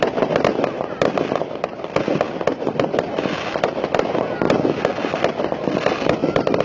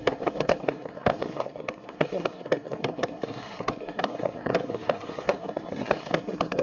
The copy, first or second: second